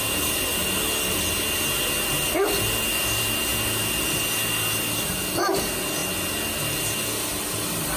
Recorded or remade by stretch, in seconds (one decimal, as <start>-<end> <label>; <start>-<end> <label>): 0.0-8.0 recorded